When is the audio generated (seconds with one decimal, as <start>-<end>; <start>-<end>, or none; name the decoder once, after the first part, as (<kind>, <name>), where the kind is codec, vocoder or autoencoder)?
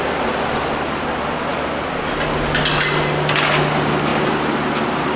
none